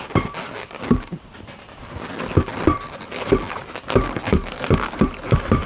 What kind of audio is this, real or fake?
real